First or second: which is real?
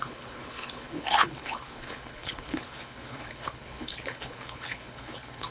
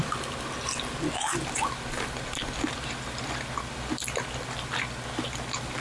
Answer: second